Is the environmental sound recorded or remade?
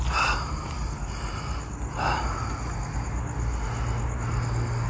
recorded